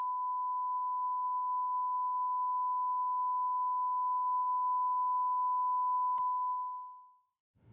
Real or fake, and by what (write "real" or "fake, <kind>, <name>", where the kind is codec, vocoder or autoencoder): fake, autoencoder, DAC-VAE